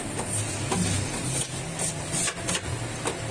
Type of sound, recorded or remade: recorded